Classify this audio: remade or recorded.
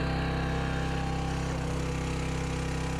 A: recorded